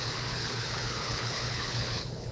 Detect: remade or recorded remade